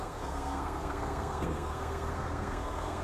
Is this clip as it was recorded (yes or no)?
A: no